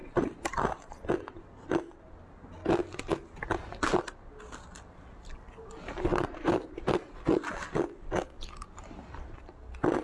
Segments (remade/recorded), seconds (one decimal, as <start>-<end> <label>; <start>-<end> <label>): 0.0-0.5 remade; 0.5-6.1 recorded; 6.1-6.9 remade; 6.9-10.0 recorded